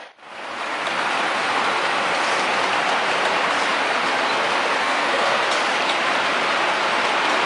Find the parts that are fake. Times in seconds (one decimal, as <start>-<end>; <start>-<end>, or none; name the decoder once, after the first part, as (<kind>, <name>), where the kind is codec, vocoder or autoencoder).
4.8-5.4 (codec, SNAC)